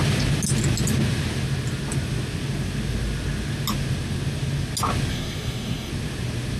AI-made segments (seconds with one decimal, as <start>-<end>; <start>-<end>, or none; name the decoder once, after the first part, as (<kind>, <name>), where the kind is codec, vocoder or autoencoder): 5.1-5.9 (codec, SNAC)